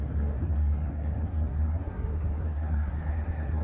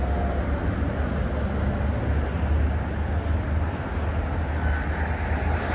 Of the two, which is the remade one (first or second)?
first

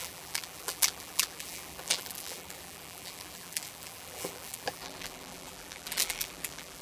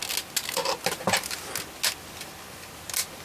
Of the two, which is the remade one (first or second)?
first